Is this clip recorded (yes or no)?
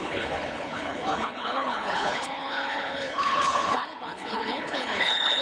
no